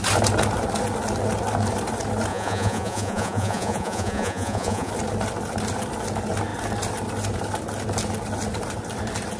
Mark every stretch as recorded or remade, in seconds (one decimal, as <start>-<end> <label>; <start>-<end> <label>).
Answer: 0.0-2.3 recorded; 2.3-4.9 remade; 4.9-9.4 recorded